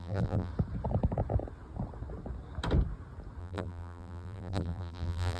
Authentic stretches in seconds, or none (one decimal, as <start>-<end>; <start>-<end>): 0.5-3.4